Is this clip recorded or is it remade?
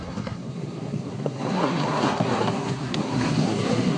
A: remade